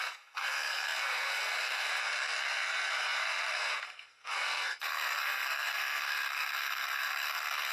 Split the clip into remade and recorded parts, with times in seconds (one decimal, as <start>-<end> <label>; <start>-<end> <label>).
0.0-7.7 remade